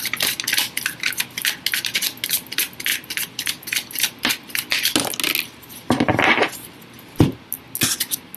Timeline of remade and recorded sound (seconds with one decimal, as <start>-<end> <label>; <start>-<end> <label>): 0.0-2.9 recorded; 2.9-4.3 remade; 4.3-8.4 recorded